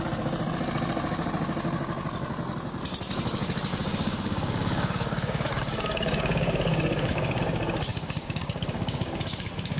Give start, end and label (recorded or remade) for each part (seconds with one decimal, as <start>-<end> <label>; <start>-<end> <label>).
0.0-3.7 recorded; 3.7-7.4 remade; 7.4-7.9 recorded; 7.9-9.8 remade